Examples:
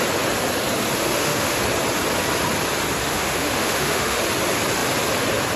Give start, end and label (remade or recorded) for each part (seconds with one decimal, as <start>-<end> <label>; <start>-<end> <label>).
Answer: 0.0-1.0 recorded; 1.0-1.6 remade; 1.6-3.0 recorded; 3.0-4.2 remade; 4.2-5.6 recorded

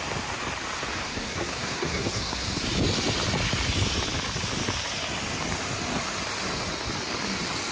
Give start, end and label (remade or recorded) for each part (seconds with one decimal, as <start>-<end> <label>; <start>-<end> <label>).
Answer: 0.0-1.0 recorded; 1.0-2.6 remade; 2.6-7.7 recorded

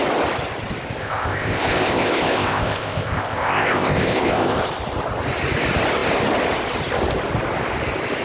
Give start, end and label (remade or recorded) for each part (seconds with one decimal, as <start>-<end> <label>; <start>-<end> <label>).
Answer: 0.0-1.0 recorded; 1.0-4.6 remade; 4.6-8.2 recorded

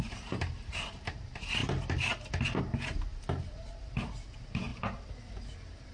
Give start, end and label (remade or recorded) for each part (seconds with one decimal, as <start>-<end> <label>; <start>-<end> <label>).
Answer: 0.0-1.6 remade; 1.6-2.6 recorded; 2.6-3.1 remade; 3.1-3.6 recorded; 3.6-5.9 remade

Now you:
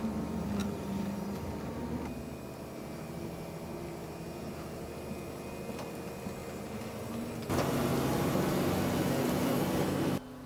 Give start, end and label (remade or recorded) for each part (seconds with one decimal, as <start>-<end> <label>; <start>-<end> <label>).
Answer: 0.0-0.6 recorded; 0.6-1.8 remade; 1.8-10.5 recorded

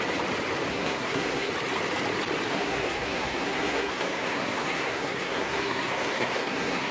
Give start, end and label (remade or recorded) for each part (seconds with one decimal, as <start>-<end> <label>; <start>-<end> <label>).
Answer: 0.0-0.7 recorded; 0.7-1.5 remade; 1.5-2.5 recorded; 2.5-6.9 remade